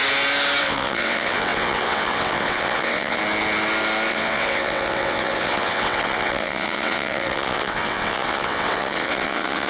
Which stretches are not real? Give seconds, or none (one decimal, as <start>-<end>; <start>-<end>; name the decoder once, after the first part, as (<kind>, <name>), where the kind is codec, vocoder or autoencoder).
0.6-3.2 (vocoder, WaveNeXt); 4.1-9.7